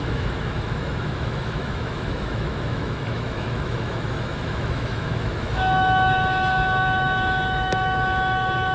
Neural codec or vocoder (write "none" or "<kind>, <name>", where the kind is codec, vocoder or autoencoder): autoencoder, DAC-VAE